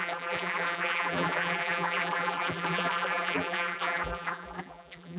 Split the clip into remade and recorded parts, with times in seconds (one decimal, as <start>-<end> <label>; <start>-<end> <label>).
0.0-5.2 remade